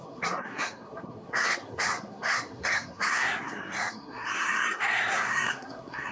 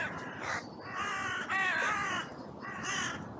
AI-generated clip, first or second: first